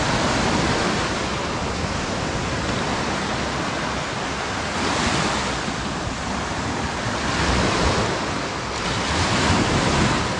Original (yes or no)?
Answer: yes